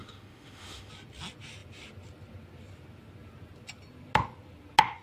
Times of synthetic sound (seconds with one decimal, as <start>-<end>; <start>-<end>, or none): 0.0-0.9